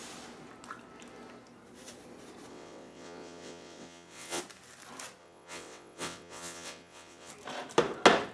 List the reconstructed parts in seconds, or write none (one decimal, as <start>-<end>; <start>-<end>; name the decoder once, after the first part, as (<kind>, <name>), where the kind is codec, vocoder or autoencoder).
2.5-4.4 (vocoder, WaveNeXt); 5.2-7.3